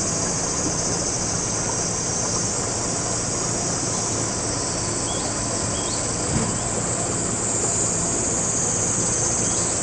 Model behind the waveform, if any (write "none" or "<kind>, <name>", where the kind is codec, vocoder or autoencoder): none